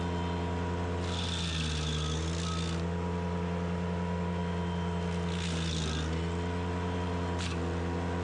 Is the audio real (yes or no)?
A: yes